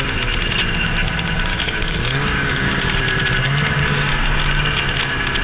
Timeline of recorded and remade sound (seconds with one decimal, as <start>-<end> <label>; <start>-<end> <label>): 0.0-1.5 recorded; 1.5-3.0 remade; 3.0-3.8 recorded; 3.8-4.4 remade; 4.4-5.4 recorded